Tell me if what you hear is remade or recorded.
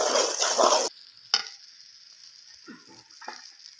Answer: recorded